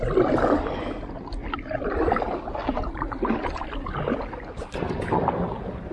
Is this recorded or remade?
recorded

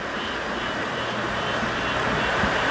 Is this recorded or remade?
recorded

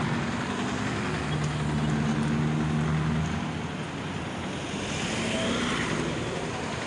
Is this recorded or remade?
recorded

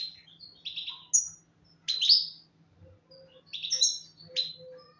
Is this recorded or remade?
recorded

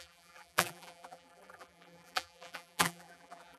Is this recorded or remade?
remade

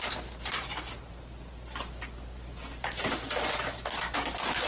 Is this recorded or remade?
recorded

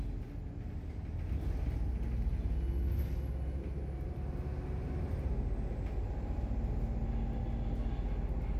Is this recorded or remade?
recorded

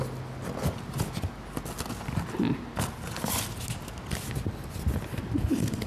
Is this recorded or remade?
recorded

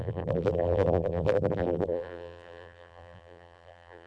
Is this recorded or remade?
remade